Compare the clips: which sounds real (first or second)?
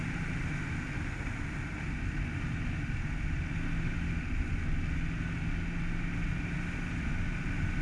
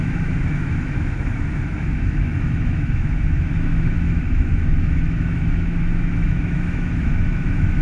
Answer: first